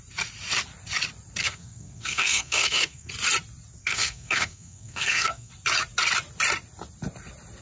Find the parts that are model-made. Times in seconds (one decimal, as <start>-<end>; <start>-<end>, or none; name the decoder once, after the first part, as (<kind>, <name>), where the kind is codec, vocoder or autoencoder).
1.4-3.1 (codec, SNAC); 3.8-5.5

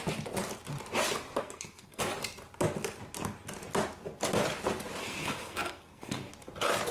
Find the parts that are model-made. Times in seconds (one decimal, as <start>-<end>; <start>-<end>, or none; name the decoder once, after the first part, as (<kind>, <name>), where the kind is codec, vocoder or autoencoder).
1.4-2.0 (codec, SNAC); 5.0-6.3